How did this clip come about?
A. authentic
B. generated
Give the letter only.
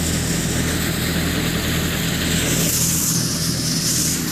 A